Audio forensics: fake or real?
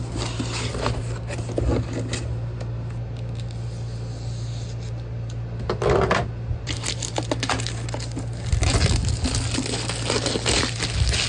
real